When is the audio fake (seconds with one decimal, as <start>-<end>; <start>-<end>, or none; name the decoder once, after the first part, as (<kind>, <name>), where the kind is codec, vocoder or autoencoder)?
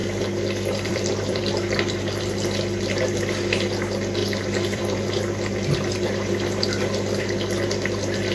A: 0.0-2.0 (vocoder, BigVGAN v2); 4.2-4.8